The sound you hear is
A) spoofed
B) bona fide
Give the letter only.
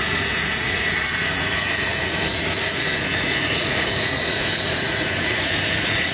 A